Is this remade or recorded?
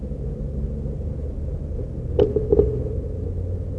recorded